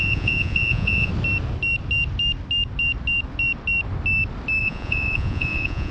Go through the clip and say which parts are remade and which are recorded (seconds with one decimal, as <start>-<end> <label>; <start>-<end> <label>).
0.0-1.1 remade; 1.1-4.6 recorded; 4.6-5.9 remade

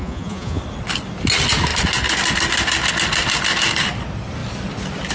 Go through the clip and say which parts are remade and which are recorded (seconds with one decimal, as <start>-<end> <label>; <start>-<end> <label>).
0.0-0.6 remade; 0.6-5.1 recorded

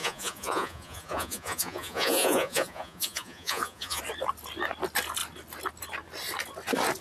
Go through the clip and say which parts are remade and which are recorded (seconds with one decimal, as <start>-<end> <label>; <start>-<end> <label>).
0.0-4.0 remade; 4.0-7.0 recorded

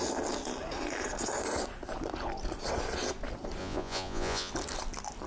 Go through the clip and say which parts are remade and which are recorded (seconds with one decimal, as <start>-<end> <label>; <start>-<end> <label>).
0.0-3.6 recorded; 3.6-4.5 remade; 4.5-5.3 recorded